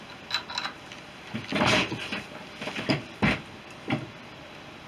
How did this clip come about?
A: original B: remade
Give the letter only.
A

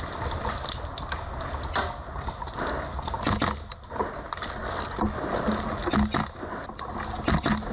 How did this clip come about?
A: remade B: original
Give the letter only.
B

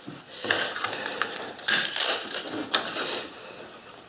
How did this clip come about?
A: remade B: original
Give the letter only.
B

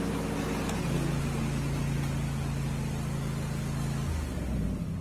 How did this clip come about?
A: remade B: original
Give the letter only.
B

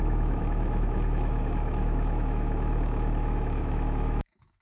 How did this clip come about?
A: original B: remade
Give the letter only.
B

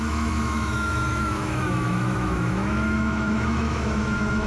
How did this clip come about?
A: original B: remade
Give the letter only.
B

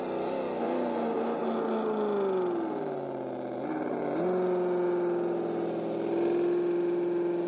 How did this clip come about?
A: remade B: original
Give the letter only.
B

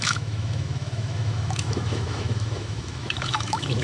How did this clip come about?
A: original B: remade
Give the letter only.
B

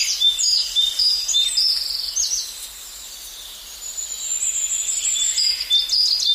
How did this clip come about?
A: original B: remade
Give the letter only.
A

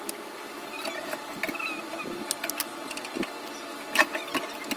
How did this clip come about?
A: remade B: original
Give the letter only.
B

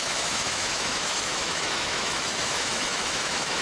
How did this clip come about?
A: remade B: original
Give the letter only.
A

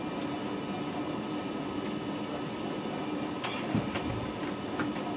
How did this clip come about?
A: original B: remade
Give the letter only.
A